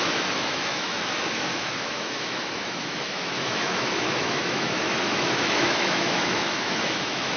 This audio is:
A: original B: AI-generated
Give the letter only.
B